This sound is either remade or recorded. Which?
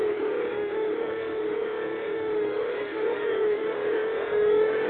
remade